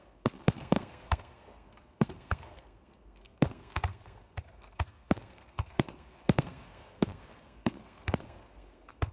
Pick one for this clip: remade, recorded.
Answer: remade